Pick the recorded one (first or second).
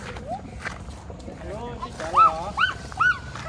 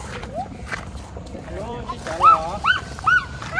first